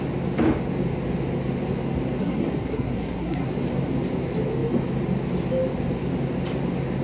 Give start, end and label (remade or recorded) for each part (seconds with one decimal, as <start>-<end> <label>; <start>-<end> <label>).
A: 0.0-2.2 recorded; 2.2-3.5 remade; 3.5-7.0 recorded